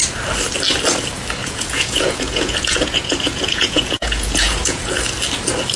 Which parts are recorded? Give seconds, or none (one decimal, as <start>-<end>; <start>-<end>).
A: 0.0-1.4; 4.9-5.8